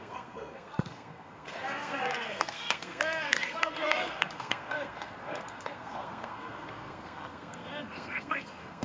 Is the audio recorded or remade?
remade